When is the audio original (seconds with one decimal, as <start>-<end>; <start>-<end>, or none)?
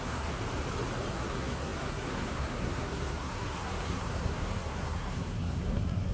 0.4-1.1